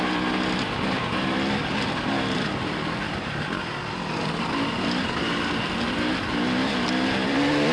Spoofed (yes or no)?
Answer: no